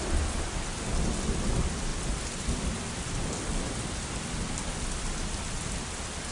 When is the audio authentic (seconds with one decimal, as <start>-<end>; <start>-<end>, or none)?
0.0-1.9; 4.2-6.3